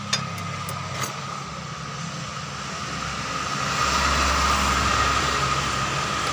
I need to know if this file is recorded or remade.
recorded